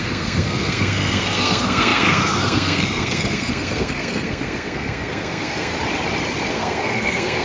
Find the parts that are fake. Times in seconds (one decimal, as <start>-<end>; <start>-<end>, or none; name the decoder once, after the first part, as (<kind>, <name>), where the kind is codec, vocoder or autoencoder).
0.0-5.7 (codec, SNAC); 6.5-7.4